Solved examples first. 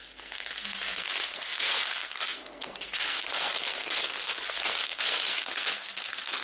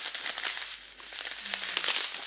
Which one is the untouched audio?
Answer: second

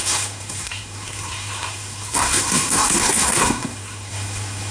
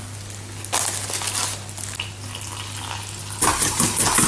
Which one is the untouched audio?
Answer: second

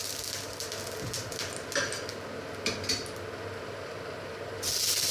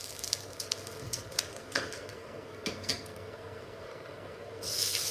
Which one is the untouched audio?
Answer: first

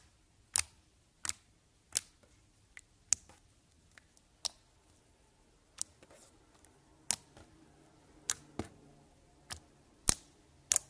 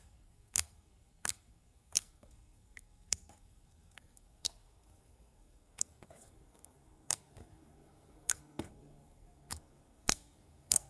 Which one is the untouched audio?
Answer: first